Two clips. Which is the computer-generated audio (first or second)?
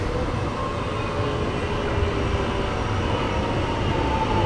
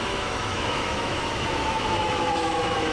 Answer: second